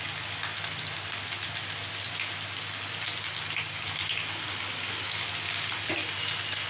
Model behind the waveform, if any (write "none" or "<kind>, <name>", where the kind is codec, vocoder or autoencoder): none